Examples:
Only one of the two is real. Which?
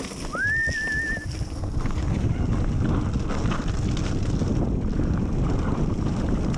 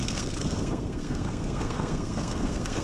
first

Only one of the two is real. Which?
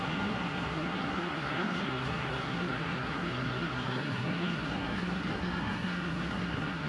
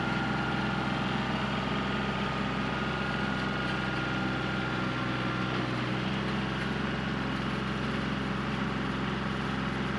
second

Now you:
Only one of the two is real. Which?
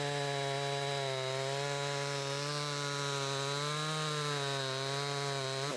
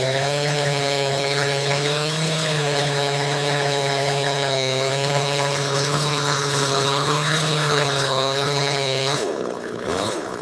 first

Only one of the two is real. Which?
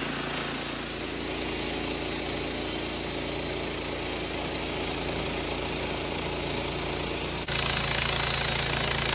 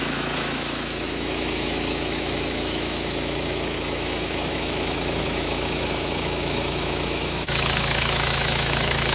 first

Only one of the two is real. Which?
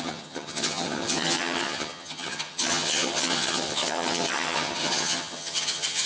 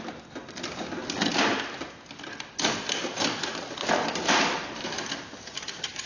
second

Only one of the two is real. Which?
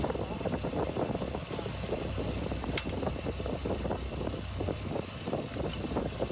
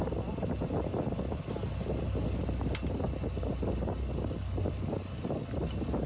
second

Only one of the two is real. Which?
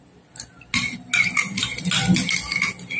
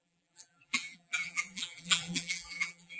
first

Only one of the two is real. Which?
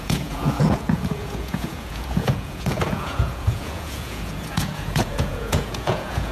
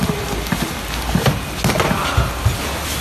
second